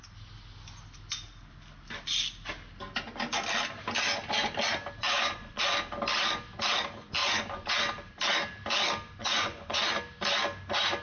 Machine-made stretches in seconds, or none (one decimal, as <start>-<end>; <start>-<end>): 5.0-5.6; 7.2-7.8; 9.2-9.8